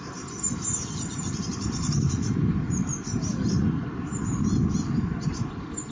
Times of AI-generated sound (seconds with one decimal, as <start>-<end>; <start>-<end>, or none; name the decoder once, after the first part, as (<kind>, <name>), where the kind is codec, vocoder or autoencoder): 0.0-2.9 (vocoder, BigVGAN v2)